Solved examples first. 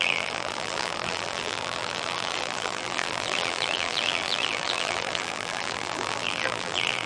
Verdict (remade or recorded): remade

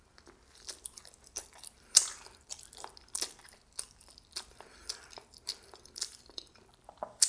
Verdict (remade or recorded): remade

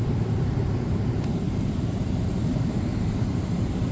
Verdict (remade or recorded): remade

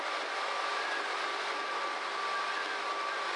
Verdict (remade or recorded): recorded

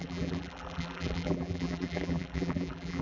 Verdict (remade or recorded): remade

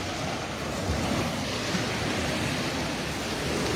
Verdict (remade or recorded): recorded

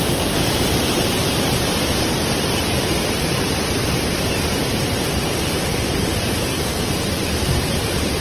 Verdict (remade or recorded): remade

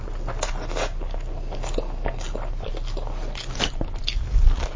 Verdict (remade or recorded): recorded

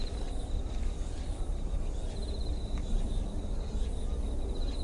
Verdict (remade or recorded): recorded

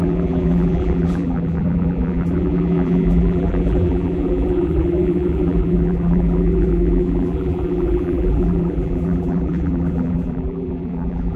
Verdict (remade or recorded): remade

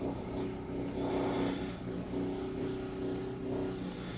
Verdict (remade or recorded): recorded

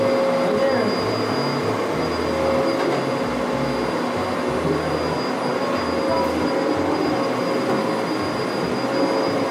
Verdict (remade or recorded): recorded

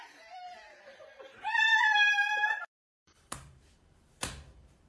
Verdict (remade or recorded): remade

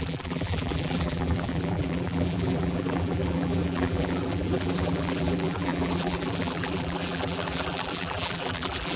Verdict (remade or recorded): remade